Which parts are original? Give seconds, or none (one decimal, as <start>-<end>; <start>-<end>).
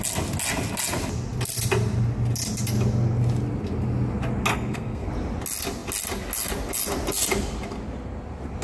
0.0-4.5; 5.1-8.6